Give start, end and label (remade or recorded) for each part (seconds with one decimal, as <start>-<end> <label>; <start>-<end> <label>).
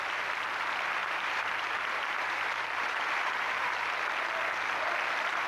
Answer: 0.0-1.0 recorded; 1.0-3.7 remade; 3.7-5.5 recorded